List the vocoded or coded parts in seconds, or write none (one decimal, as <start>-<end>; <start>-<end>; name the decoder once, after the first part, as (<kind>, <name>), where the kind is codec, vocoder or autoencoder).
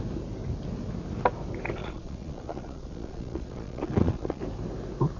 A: 1.8-4.4 (vocoder, Vocos)